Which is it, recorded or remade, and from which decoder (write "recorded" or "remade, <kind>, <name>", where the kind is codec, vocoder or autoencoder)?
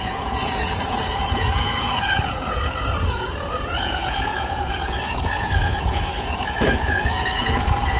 remade, vocoder, Vocos